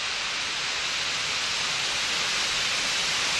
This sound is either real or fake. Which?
real